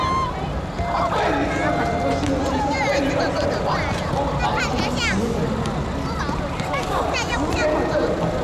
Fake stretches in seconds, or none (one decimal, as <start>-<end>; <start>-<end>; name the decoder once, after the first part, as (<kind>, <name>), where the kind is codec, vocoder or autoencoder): none